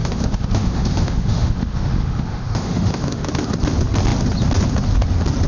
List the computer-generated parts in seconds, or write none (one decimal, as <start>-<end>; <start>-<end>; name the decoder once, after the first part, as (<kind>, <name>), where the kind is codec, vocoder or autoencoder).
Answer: 0.0-3.3 (autoencoder, DAC-VAE)